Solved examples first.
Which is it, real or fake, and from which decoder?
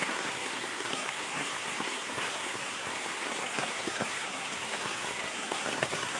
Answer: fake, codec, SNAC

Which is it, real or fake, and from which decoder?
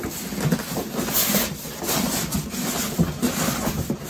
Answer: real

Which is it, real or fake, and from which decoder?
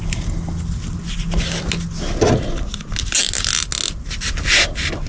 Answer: real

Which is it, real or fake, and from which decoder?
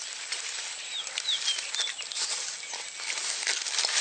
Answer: real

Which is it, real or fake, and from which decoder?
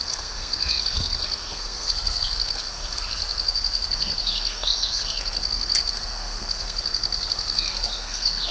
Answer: fake, codec, SNAC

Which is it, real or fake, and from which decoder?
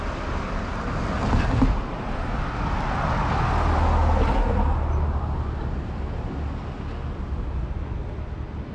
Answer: real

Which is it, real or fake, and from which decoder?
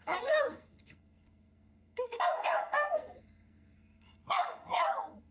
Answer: fake, codec, SNAC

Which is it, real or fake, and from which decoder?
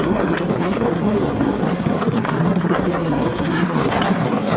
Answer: fake, codec, SNAC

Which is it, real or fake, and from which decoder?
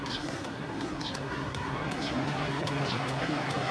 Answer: fake, codec, SNAC